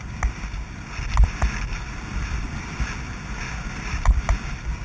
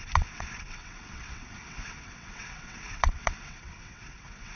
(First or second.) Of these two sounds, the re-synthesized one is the second